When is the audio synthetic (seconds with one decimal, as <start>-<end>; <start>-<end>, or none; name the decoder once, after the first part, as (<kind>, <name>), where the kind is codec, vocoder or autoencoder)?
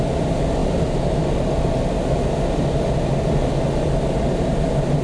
none